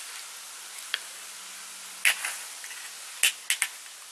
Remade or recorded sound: recorded